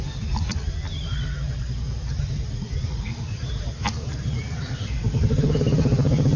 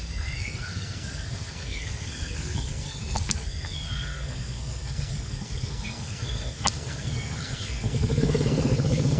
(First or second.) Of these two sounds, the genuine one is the first